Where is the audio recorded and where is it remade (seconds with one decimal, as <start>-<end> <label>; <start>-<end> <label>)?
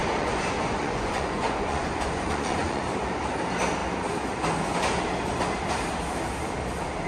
0.0-2.8 remade; 2.8-7.1 recorded